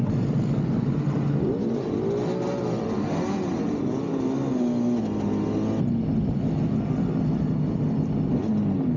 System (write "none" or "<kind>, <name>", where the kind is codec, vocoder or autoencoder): none